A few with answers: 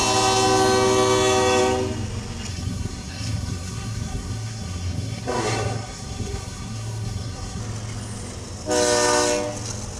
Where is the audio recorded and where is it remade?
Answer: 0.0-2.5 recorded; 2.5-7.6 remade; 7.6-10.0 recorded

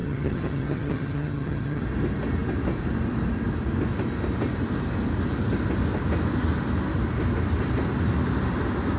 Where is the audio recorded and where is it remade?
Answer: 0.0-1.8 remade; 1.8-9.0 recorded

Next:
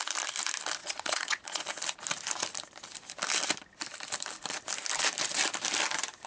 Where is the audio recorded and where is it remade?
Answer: 0.0-0.8 recorded; 0.8-1.6 remade; 1.6-6.3 recorded

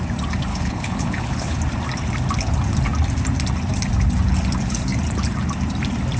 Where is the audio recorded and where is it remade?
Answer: 0.0-0.5 recorded; 0.5-1.6 remade; 1.6-6.2 recorded

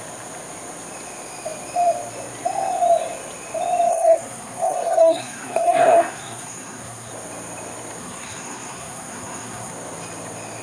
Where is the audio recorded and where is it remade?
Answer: 0.0-3.9 recorded; 3.9-7.1 remade; 7.1-8.0 recorded; 8.0-9.7 remade; 9.7-10.6 recorded